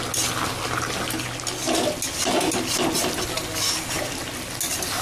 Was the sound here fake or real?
real